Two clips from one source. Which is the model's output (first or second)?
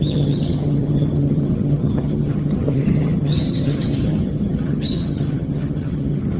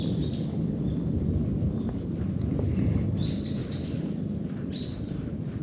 first